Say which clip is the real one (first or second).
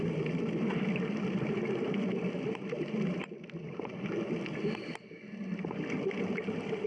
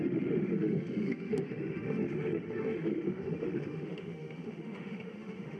first